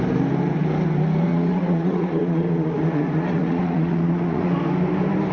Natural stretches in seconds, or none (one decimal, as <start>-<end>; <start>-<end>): 0.0-1.3; 4.5-5.3